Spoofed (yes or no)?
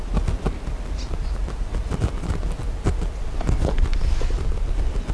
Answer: no